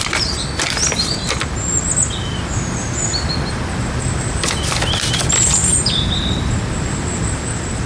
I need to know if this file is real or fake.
real